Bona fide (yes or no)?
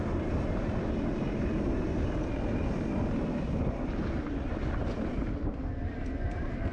yes